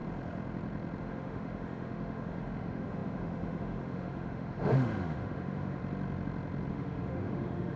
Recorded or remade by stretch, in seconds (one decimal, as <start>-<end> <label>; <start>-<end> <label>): 0.0-1.0 recorded; 1.0-5.8 remade; 5.8-6.7 recorded; 6.7-7.8 remade